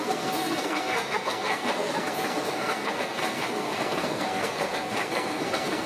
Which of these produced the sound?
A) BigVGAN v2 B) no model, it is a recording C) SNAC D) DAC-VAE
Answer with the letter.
C